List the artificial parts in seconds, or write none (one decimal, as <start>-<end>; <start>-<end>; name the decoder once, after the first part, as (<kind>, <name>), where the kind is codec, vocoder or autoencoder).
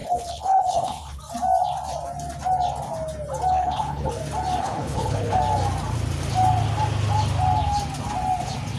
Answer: 0.0-1.2 (codec, HILCodec); 3.5-4.1; 4.6-5.4